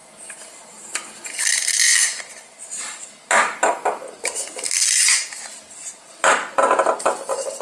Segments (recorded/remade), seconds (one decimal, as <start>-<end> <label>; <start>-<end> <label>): 0.0-7.6 recorded